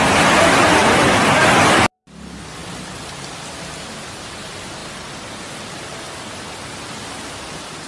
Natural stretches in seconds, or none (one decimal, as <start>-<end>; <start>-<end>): 0.0-0.8; 1.4-7.9